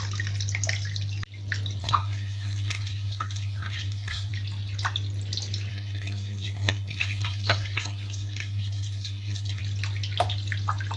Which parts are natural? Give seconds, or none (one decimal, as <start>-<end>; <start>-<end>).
0.0-1.8; 4.3-5.7; 9.6-11.0